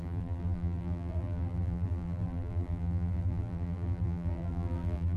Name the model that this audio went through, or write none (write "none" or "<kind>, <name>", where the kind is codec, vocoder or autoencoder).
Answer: vocoder, BigVGAN v2